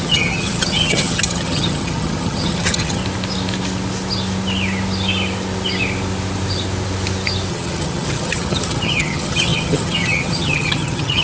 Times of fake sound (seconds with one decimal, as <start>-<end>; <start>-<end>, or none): 0.0-3.0; 7.5-11.2